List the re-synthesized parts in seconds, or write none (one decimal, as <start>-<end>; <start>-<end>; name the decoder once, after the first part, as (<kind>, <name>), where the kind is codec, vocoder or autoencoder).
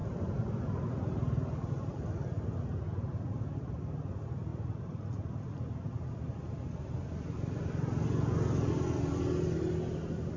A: none